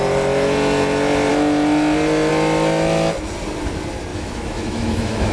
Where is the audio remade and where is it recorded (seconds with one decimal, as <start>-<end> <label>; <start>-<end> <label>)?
0.0-4.1 recorded; 4.1-5.3 remade